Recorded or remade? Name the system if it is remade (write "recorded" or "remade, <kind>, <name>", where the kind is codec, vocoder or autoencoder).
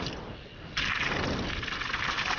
recorded